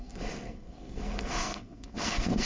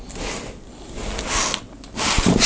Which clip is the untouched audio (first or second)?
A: second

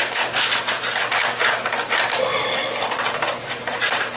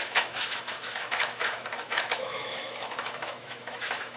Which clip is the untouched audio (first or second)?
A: first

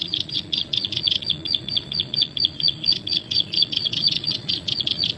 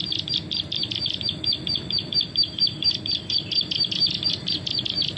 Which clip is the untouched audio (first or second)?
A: second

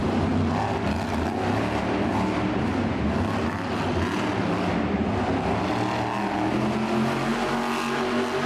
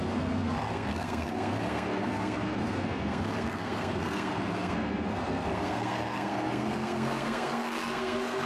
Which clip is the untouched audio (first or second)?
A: first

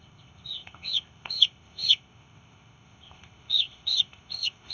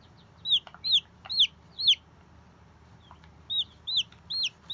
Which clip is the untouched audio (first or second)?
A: second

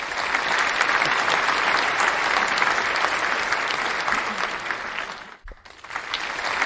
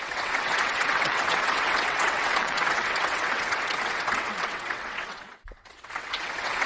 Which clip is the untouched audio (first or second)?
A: first